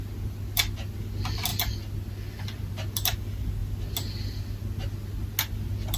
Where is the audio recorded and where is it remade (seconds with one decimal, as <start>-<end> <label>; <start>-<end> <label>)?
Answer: 0.0-6.0 recorded